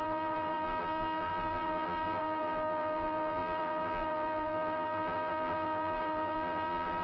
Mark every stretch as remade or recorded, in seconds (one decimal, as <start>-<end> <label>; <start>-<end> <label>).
0.0-7.0 remade